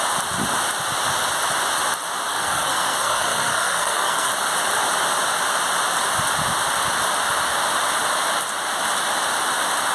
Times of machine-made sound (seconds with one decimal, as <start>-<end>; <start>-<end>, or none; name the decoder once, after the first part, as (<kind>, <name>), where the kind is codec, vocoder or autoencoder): 2.3-4.3 (codec, SNAC)

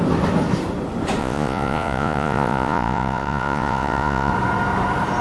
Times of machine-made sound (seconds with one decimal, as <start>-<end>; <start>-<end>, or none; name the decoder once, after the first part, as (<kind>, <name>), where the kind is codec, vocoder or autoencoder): 1.2-4.3 (vocoder, Vocos)

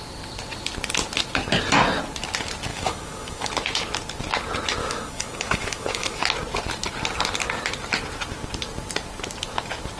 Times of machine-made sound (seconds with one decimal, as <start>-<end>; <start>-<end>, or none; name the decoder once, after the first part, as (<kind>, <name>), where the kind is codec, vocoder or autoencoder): 2.7-3.5 (autoencoder, DAC-VAE); 4.8-6.2

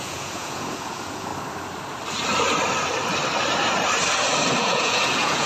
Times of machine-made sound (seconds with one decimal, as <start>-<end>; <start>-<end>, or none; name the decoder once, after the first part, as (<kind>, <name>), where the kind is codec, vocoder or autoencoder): 0.0-1.3 (vocoder, Vocos); 4.6-5.5

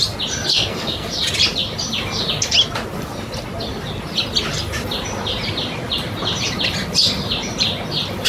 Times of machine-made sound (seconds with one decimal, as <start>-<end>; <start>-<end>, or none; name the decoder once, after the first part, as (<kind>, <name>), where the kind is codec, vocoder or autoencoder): 0.5-1.1 (codec, SNAC)